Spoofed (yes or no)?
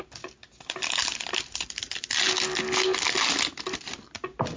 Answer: no